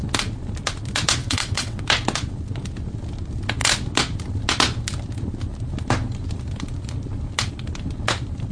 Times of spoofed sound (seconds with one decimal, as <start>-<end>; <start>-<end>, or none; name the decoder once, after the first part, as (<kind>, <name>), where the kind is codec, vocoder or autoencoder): 1.2-1.8 (vocoder, WaveNeXt)